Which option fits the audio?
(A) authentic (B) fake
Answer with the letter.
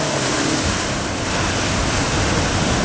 A